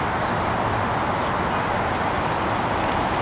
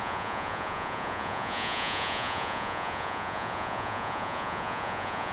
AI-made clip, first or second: second